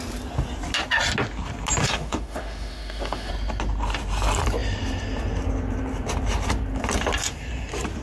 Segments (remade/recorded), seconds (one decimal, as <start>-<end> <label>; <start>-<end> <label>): 0.0-1.8 recorded; 1.8-3.3 remade; 3.3-8.0 recorded